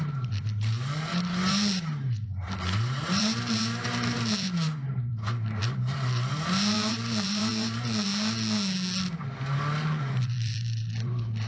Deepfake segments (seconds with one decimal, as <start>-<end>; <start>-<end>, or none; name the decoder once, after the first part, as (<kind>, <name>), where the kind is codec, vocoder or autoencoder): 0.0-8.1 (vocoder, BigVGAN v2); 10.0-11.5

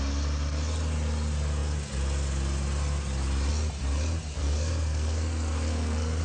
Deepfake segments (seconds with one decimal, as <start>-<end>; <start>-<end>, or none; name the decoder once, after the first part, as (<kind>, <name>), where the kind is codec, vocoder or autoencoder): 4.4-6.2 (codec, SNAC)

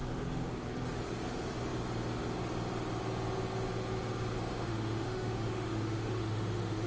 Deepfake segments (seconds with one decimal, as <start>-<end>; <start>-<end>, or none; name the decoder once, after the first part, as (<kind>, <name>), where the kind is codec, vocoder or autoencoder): 0.0-0.5 (autoencoder, DAC-VAE); 4.5-6.9

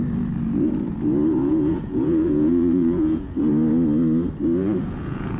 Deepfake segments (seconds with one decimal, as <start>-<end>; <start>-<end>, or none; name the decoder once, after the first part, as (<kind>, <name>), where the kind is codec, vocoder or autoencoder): 1.3-3.5 (vocoder, Vocos); 4.6-5.4

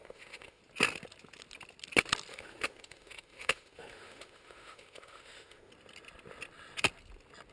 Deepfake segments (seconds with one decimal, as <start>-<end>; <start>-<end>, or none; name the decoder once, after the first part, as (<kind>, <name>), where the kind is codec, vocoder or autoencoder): 0.0-0.6 (autoencoder, DAC-VAE); 2.3-5.7